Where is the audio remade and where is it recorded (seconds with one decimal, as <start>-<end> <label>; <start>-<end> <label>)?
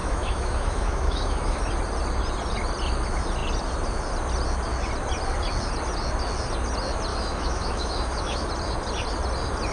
0.0-1.6 remade; 1.6-7.1 recorded; 7.1-8.5 remade; 8.5-9.7 recorded